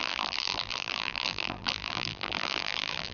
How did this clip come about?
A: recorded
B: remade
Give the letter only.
B